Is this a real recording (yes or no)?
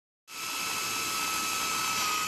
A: yes